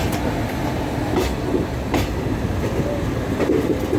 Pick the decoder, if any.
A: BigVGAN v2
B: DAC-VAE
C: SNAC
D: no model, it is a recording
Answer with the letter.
D